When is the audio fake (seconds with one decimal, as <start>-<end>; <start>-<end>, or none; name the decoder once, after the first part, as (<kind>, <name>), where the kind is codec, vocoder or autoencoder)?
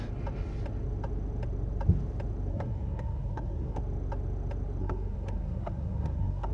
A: 2.5-3.8 (codec, SNAC); 4.8-6.5